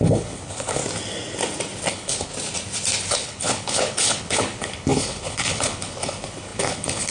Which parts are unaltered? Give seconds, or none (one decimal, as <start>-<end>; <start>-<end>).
0.8-1.9; 2.3-3.1